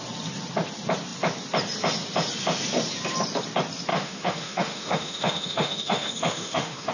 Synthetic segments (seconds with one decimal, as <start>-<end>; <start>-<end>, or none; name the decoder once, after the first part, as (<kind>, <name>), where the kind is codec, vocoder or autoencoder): 3.9-6.9 (autoencoder, DAC-VAE)